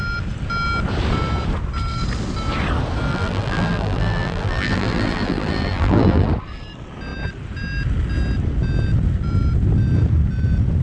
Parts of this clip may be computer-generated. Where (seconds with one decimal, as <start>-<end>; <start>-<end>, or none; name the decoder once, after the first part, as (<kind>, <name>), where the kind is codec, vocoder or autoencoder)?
3.1-6.3 (vocoder, BigVGAN v2)